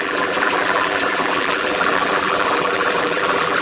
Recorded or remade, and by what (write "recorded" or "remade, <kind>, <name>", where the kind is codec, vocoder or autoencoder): remade, vocoder, BigVGAN v2